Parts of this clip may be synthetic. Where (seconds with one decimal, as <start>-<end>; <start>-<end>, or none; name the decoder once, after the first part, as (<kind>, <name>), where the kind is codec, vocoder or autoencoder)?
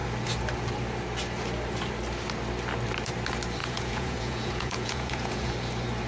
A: 3.6-5.5 (vocoder, Vocos)